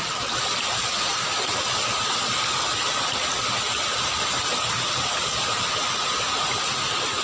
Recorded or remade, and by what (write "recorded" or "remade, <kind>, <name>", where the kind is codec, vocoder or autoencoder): recorded